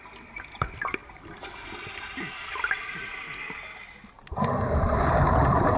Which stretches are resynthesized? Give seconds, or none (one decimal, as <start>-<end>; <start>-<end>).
0.0-1.0; 4.5-5.8